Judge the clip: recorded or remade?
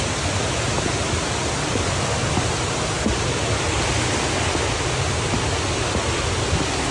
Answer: recorded